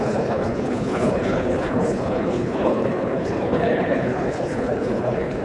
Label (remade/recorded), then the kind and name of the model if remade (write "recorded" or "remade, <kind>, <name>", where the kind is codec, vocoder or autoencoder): remade, codec, HILCodec